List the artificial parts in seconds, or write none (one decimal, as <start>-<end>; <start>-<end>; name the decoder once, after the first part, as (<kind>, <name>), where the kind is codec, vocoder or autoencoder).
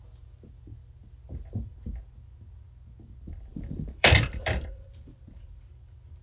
3.5-5.7 (vocoder, BigVGAN v2)